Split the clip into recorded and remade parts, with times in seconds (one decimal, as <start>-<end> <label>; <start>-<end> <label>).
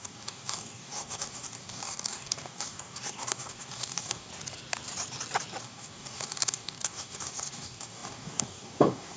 0.0-4.3 remade; 4.3-5.6 recorded; 5.6-9.2 remade